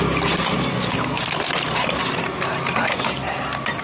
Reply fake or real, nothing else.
real